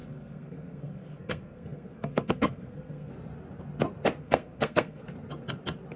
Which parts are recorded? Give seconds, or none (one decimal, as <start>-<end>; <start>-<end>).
3.1-4.2; 5.0-6.0